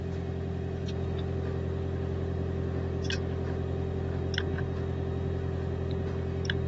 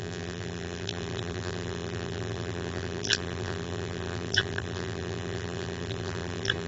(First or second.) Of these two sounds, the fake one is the second